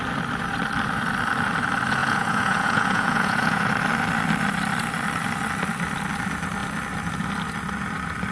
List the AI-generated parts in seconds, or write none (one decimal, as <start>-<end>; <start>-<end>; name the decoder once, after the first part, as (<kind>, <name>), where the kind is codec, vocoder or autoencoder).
2.0-3.7 (vocoder, Vocos)